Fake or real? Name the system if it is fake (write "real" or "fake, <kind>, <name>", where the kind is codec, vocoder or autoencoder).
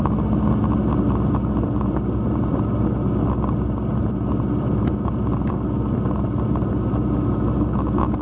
real